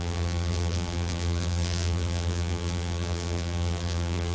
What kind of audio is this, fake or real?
fake